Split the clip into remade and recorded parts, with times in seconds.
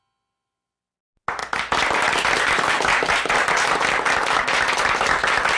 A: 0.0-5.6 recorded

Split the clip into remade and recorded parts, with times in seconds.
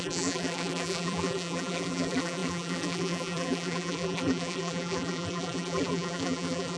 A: 0.0-6.8 remade